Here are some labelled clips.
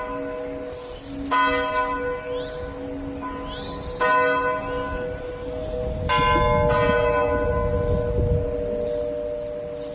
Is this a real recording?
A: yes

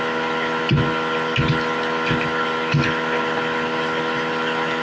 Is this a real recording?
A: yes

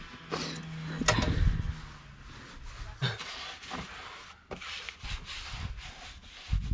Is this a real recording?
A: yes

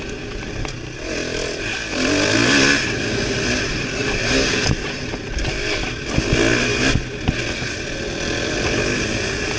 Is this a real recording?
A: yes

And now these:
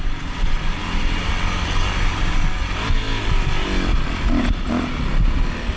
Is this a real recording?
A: yes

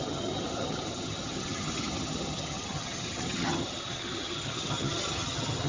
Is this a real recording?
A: no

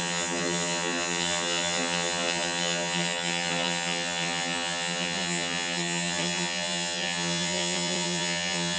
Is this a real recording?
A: no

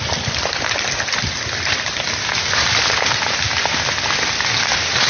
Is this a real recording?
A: yes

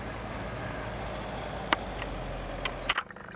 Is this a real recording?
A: yes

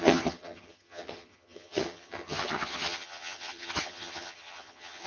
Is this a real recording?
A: no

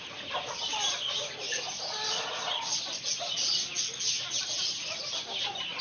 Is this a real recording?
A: yes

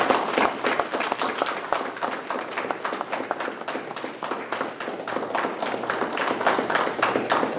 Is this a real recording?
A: yes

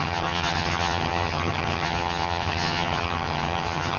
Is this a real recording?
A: no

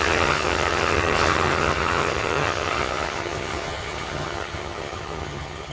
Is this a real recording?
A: no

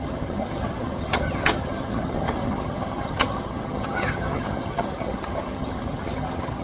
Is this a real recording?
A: no